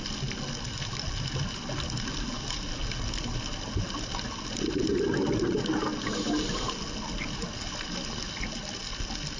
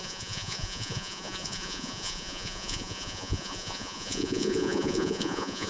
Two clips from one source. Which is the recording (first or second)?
first